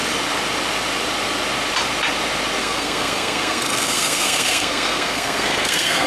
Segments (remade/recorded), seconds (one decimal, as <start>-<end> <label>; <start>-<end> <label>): 0.0-2.6 recorded; 2.6-6.1 remade